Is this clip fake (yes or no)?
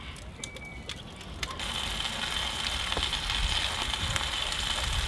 no